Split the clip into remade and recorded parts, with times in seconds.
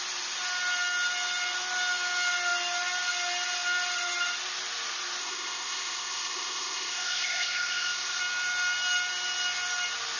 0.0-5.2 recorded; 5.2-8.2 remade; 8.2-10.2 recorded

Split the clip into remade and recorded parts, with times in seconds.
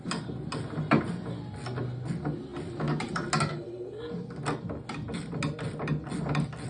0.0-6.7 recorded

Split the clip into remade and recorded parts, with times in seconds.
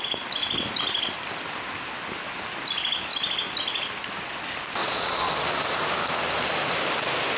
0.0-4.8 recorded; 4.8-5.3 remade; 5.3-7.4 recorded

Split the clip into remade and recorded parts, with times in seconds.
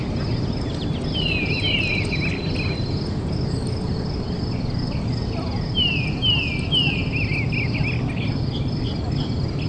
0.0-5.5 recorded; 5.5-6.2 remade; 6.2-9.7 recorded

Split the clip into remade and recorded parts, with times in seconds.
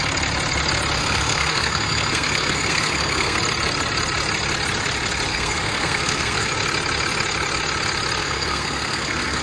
0.0-1.0 recorded; 1.0-3.4 remade; 3.4-5.3 recorded; 5.3-6.5 remade; 6.5-8.2 recorded; 8.2-9.4 remade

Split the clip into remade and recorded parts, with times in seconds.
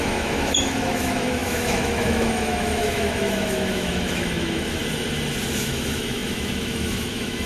0.0-4.8 remade; 4.8-5.6 recorded; 5.6-7.5 remade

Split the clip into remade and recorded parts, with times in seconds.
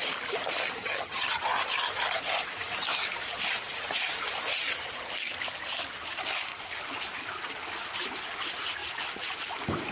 0.0-0.8 recorded; 0.8-1.4 remade; 1.4-9.9 recorded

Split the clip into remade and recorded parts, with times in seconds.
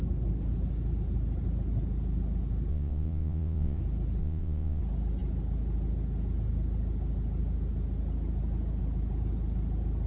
0.0-2.7 recorded; 2.7-3.8 remade; 3.8-4.2 recorded; 4.2-4.8 remade; 4.8-10.1 recorded